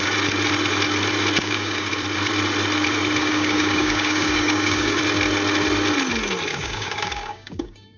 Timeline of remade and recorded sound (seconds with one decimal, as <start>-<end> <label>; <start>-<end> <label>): 0.0-1.4 recorded; 1.4-1.9 remade; 1.9-3.2 recorded; 3.2-5.0 remade; 5.0-6.5 recorded; 6.5-8.0 remade